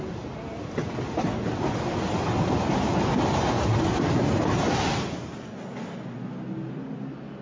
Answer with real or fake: real